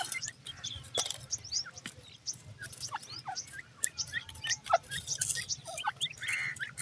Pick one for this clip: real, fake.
fake